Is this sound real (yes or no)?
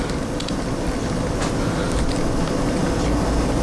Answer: yes